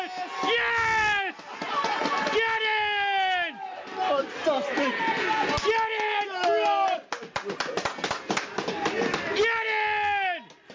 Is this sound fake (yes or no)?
no